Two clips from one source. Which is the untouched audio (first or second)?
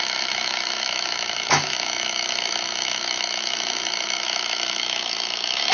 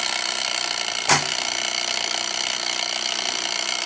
second